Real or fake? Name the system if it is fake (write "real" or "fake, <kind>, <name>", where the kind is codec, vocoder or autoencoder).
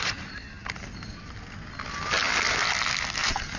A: real